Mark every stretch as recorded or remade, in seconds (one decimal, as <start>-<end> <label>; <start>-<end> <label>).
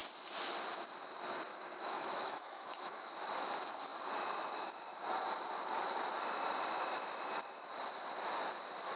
0.0-1.5 recorded; 1.5-3.1 remade; 3.1-9.0 recorded